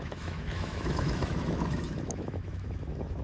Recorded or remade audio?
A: remade